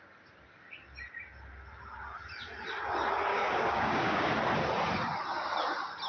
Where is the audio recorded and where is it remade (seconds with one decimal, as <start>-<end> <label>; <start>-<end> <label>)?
0.0-3.3 recorded; 3.3-4.3 remade; 4.3-6.1 recorded